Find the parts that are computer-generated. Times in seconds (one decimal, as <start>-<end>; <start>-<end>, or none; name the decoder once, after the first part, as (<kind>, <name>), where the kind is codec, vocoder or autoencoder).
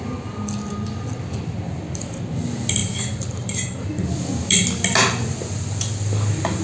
2.8-3.9 (vocoder, BigVGAN v2)